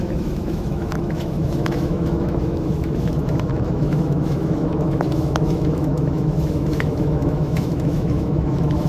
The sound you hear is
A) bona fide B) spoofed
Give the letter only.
B